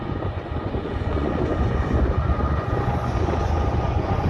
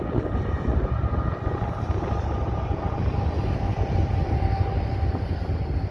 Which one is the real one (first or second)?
second